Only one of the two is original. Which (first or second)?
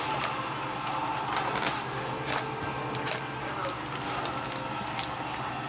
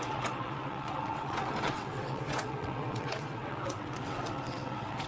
first